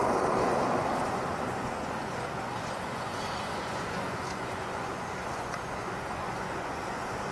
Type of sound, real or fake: fake